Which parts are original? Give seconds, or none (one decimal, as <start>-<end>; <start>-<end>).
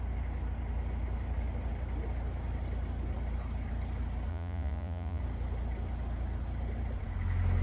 0.0-4.3; 5.2-7.6